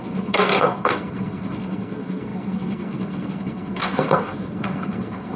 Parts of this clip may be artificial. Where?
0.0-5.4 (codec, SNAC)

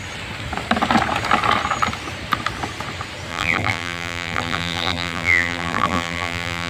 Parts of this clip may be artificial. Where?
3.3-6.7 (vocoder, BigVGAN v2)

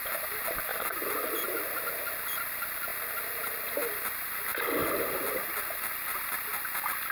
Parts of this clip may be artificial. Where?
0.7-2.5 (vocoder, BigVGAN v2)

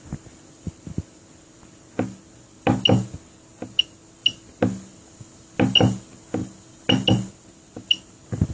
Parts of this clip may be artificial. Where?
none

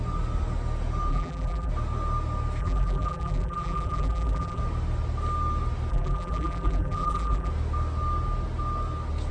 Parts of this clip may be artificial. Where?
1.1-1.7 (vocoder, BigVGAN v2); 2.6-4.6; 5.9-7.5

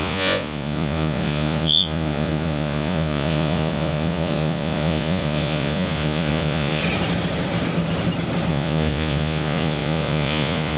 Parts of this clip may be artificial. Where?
0.0-6.8 (vocoder, Vocos); 8.5-10.8

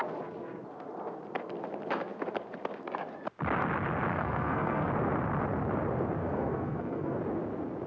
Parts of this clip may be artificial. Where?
4.1-4.9 (codec, SNAC); 6.2-7.2

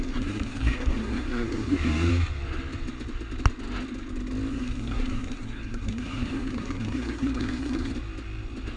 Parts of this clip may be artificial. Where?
0.0-2.1 (codec, SNAC); 4.5-7.9